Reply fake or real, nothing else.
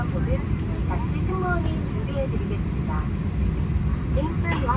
real